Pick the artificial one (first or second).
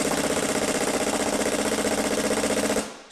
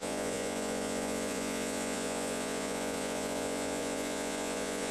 second